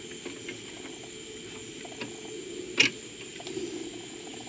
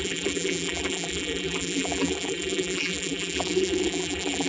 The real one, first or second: first